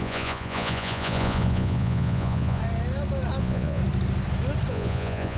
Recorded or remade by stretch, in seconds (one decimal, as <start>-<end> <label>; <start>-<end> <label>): 0.0-2.6 remade; 2.6-3.4 recorded; 3.4-3.8 remade; 3.8-4.7 recorded; 4.7-5.4 remade

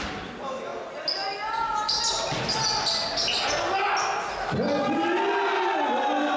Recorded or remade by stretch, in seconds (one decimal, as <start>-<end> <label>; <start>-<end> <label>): 0.0-6.4 recorded

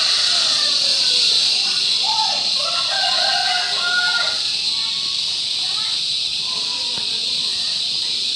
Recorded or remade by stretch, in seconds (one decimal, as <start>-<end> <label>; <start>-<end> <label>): 0.0-3.4 remade; 3.4-5.3 recorded; 5.3-8.4 remade